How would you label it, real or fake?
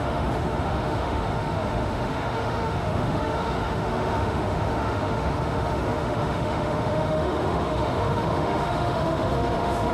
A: fake